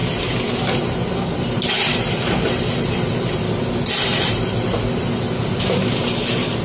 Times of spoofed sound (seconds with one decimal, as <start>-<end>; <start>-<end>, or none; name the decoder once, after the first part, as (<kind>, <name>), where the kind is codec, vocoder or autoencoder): none